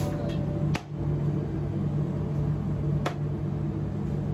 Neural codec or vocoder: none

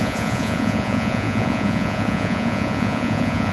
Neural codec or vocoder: vocoder, Vocos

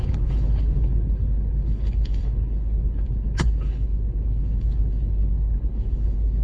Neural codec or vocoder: codec, HILCodec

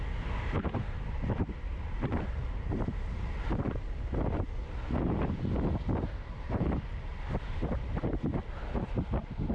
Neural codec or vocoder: none